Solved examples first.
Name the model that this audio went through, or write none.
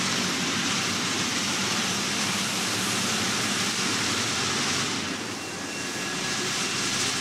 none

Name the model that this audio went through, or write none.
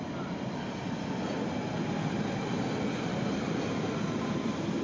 none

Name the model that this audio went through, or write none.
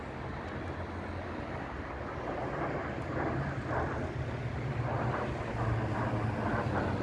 none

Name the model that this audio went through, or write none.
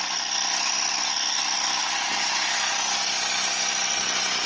none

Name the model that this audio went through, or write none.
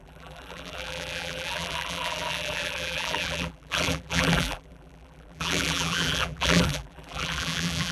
vocoder, BigVGAN v2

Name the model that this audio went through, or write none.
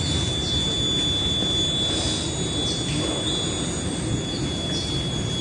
none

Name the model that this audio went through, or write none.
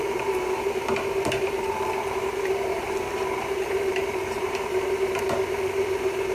vocoder, BigVGAN v2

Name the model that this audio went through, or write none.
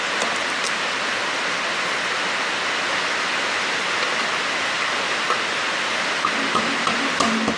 none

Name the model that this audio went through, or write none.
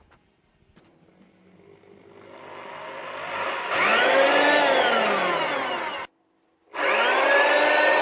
none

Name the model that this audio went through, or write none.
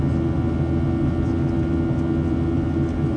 none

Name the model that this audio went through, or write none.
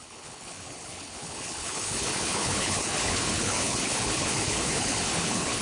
codec, HILCodec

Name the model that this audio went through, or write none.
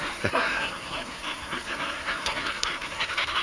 codec, SNAC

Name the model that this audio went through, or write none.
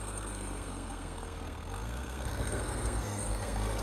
codec, SNAC